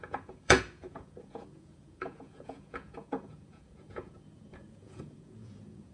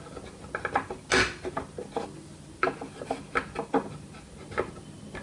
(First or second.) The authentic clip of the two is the second